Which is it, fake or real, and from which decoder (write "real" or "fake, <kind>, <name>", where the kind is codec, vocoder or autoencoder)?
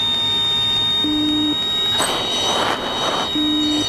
real